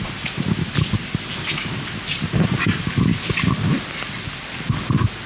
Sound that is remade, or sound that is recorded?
recorded